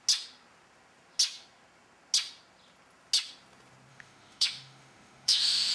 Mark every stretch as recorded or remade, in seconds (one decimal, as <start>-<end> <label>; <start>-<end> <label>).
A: 0.0-3.9 recorded; 3.9-5.7 remade